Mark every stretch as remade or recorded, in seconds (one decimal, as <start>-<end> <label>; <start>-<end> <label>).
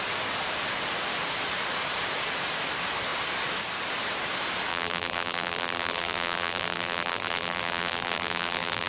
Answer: 0.0-4.7 recorded; 4.7-8.9 remade